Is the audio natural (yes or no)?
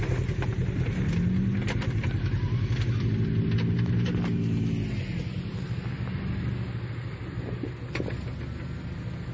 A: yes